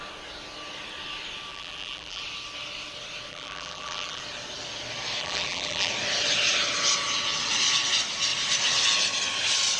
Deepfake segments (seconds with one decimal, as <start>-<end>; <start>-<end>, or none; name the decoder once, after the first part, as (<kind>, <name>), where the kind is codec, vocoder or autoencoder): 1.5-2.2 (vocoder, BigVGAN v2); 3.3-4.2; 5.2-5.9